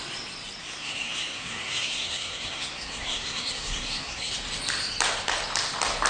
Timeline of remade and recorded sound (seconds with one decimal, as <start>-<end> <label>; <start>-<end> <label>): 0.0-0.6 recorded; 0.6-4.3 remade; 4.3-6.1 recorded